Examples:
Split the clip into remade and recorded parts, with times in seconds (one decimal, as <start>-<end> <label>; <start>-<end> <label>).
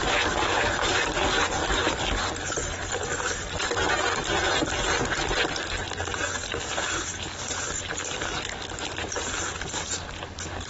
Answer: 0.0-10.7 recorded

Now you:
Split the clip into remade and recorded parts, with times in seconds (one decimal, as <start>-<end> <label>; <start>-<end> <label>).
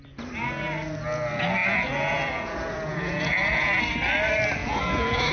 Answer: 0.0-1.6 recorded; 1.6-3.8 remade; 3.8-4.6 recorded; 4.6-5.3 remade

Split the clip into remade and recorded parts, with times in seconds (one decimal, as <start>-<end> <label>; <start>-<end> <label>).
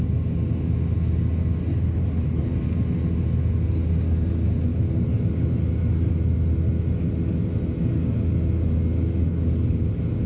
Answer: 0.0-1.7 recorded; 1.7-2.4 remade; 2.4-9.3 recorded; 9.3-9.9 remade; 9.9-10.3 recorded